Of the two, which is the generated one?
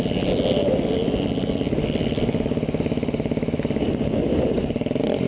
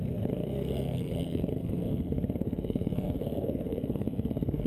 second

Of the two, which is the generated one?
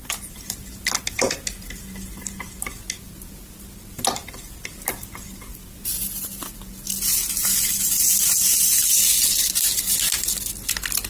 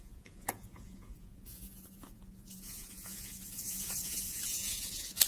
second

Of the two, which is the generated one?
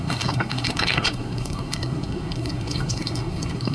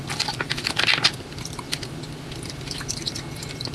first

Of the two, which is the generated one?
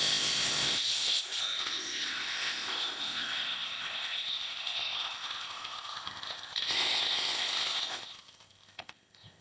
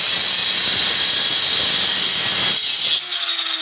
first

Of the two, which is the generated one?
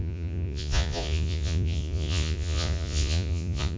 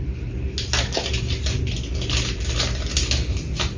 first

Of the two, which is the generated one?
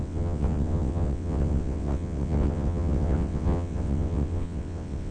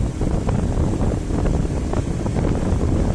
first